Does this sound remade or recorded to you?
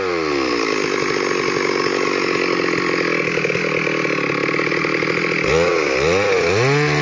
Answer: recorded